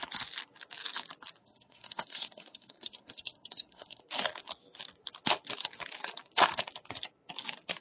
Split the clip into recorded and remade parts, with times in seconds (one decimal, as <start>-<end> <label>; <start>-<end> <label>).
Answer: 0.0-1.4 recorded; 1.4-4.0 remade; 4.0-7.8 recorded